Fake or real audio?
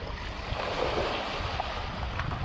real